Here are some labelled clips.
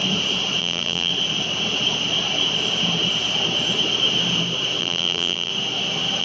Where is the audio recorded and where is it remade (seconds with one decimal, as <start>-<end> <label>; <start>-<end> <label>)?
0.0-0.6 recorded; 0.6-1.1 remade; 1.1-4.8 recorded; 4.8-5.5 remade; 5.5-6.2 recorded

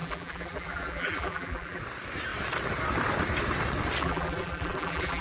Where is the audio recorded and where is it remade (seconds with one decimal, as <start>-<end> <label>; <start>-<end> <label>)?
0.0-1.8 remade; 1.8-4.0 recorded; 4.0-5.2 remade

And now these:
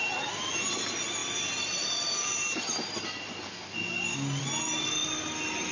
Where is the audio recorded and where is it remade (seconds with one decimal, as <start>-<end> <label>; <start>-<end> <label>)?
0.0-5.7 recorded

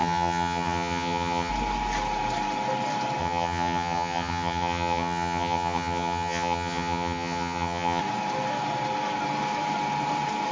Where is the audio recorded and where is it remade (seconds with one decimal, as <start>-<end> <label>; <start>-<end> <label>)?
0.0-1.5 remade; 1.5-3.2 recorded; 3.2-8.0 remade; 8.0-10.5 recorded

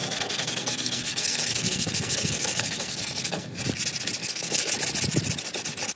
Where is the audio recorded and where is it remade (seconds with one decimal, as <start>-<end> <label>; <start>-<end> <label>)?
0.0-3.6 remade; 3.6-4.2 recorded; 4.2-4.7 remade; 4.7-6.0 recorded

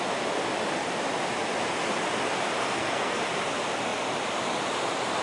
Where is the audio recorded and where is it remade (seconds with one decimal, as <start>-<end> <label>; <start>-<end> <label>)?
0.0-2.6 recorded; 2.6-3.2 remade; 3.2-5.2 recorded